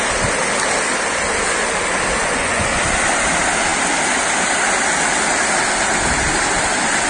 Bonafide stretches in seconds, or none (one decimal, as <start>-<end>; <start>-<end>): 0.0-2.2; 2.8-7.1